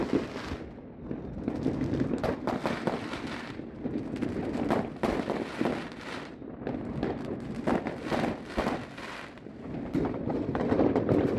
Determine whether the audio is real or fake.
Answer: real